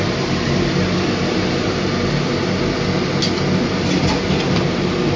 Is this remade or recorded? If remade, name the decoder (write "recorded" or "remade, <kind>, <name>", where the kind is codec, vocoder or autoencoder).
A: recorded